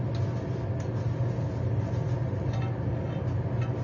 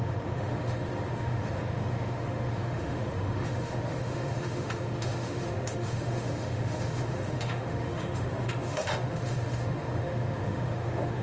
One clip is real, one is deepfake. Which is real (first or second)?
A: first